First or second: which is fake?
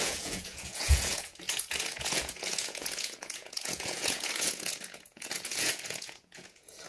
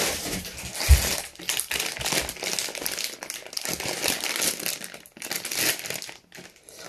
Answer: first